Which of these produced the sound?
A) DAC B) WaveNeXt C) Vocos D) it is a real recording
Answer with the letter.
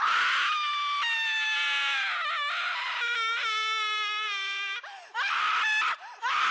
D